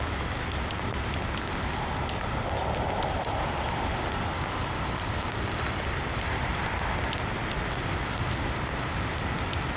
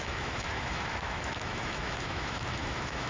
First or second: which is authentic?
first